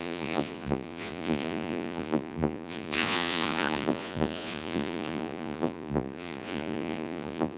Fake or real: fake